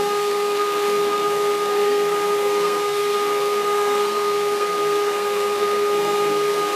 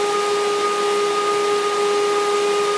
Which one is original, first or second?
second